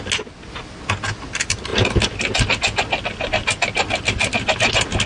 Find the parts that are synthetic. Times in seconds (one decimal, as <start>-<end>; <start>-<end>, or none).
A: none